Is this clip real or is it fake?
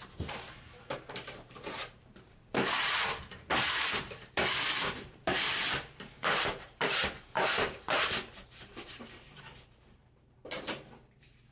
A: fake